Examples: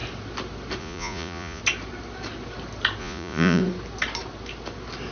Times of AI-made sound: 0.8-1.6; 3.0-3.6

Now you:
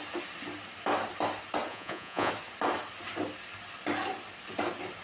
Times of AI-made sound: 1.7-2.3

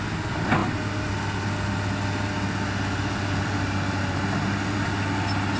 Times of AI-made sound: none

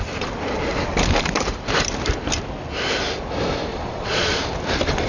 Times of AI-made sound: 3.7-4.4